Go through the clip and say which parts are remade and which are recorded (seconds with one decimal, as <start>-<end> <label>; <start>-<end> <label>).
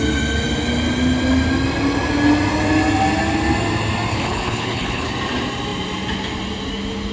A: 0.0-4.1 recorded; 4.1-5.1 remade; 5.1-7.1 recorded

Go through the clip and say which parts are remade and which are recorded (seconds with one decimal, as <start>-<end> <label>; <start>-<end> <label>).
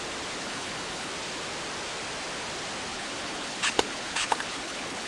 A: 0.0-0.4 recorded; 0.4-1.1 remade; 1.1-2.9 recorded; 2.9-5.1 remade